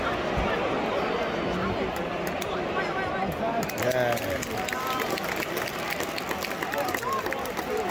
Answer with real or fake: real